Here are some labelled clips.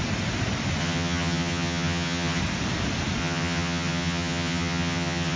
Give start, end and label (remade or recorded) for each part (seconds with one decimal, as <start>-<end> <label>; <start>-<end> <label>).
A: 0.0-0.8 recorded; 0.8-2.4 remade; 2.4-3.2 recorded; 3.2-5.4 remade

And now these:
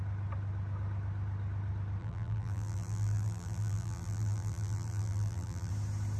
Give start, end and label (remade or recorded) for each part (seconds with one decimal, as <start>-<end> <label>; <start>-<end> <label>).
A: 0.0-2.0 recorded; 2.0-5.7 remade; 5.7-6.2 recorded

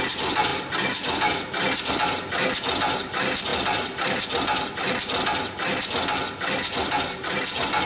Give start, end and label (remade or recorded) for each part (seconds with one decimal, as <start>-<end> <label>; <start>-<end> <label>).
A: 0.0-0.5 remade; 0.5-1.9 recorded; 1.9-7.9 remade

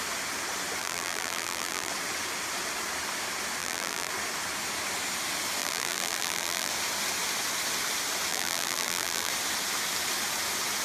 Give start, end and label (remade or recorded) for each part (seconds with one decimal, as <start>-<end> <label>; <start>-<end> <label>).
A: 0.0-0.8 recorded; 0.8-1.9 remade; 1.9-3.6 recorded; 3.6-4.1 remade; 4.1-5.6 recorded; 5.6-6.7 remade; 6.7-8.3 recorded; 8.3-9.3 remade; 9.3-10.8 recorded